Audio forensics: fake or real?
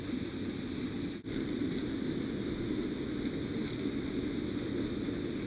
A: real